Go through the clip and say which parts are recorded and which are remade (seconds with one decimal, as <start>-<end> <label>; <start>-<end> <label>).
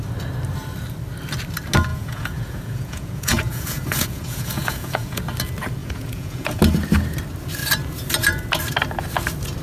0.0-1.9 recorded; 1.9-5.2 remade; 5.2-5.8 recorded; 5.8-6.6 remade; 6.6-9.6 recorded